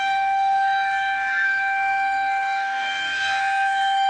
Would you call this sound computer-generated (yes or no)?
yes